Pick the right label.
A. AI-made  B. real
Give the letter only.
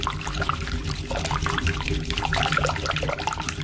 B